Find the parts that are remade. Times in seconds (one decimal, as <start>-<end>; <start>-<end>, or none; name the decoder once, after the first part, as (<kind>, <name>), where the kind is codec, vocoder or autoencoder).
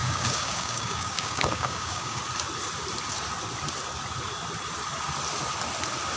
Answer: 0.0-2.2 (codec, DAC)